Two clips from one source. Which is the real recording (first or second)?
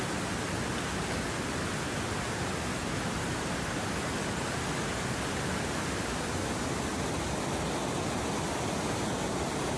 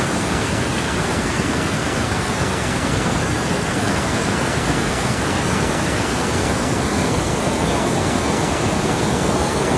first